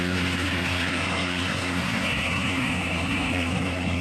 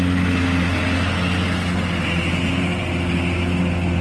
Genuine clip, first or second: second